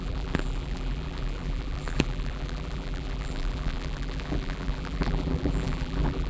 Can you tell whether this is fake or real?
fake